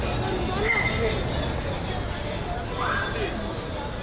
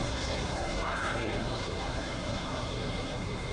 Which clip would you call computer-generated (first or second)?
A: second